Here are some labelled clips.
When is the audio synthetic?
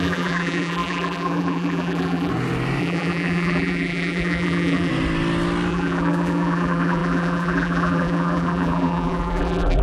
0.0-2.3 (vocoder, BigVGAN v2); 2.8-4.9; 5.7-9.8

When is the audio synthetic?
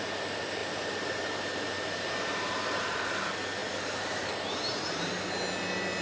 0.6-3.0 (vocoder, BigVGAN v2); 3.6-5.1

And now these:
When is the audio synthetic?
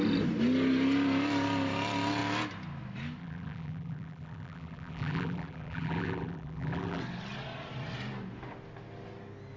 3.2-7.0 (vocoder, BigVGAN v2)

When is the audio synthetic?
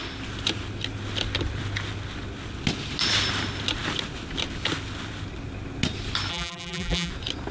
6.3-7.1 (vocoder, BigVGAN v2)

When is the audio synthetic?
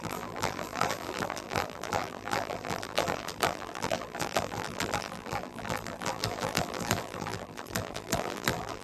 0.0-8.8 (vocoder, BigVGAN v2)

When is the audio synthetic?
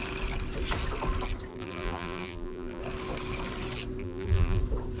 1.5-2.8 (vocoder, BigVGAN v2); 4.0-4.6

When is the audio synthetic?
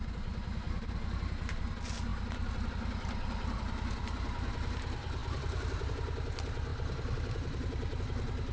5.2-5.9 (vocoder, BigVGAN v2); 6.7-8.0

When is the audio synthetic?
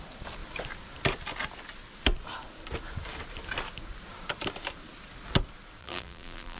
5.8-6.6 (vocoder, BigVGAN v2)